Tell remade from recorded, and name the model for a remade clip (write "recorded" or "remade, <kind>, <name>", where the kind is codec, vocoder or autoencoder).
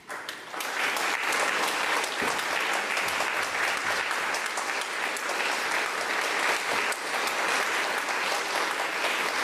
recorded